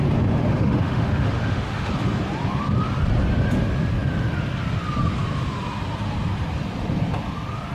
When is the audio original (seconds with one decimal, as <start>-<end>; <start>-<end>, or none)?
0.0-0.4; 1.9-7.7